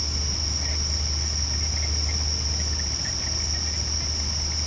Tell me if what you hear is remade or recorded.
recorded